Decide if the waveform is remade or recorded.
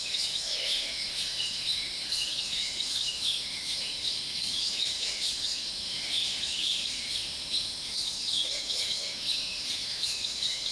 remade